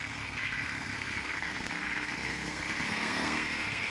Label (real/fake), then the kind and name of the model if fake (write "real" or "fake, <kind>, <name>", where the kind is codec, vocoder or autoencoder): fake, codec, SNAC